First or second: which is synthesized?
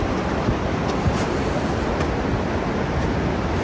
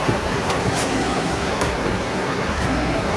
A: second